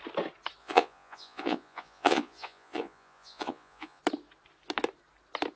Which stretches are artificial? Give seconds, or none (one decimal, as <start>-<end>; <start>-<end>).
0.6-4.0

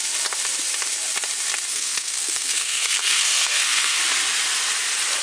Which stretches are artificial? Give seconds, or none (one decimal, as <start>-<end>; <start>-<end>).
1.7-4.0

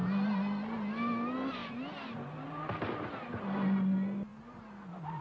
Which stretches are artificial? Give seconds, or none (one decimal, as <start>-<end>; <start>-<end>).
none

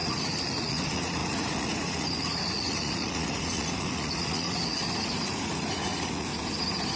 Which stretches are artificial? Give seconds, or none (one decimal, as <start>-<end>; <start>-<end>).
0.0-6.3